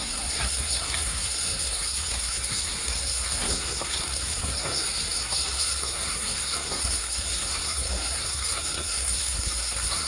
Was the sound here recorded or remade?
remade